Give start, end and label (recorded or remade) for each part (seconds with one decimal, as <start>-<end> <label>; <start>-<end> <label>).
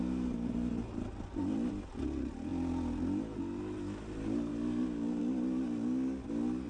0.0-6.7 recorded